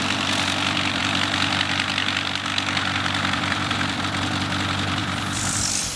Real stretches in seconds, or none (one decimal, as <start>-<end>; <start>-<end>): 0.0-1.0; 1.9-2.5; 4.0-5.0